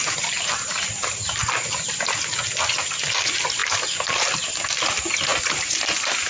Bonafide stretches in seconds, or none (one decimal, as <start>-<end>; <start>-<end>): 0.0-6.3